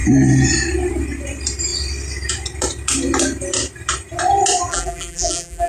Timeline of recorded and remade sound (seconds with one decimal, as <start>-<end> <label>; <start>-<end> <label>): 0.0-4.7 recorded; 4.7-5.7 remade